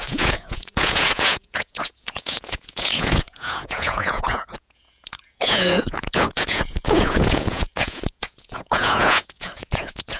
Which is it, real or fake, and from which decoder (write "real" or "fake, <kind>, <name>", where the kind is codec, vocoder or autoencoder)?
fake, vocoder, Vocos